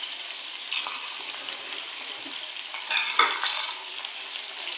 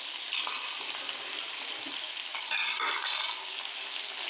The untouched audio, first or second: second